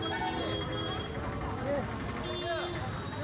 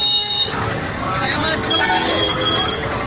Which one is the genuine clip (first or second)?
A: first